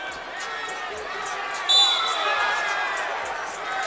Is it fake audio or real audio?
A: real